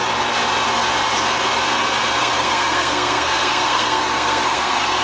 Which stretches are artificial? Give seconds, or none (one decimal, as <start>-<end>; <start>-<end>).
2.2-5.0